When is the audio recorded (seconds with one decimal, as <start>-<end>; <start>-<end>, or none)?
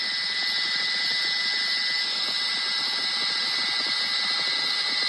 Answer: 0.0-5.1